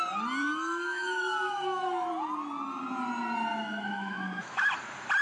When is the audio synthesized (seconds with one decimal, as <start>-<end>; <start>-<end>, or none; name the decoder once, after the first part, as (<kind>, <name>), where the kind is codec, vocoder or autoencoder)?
0.4-2.1 (autoencoder, DAC-VAE); 3.5-4.7